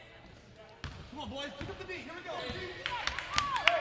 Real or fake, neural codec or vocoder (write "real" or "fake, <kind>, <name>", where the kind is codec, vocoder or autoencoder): real